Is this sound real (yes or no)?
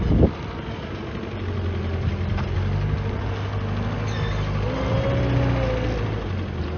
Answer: yes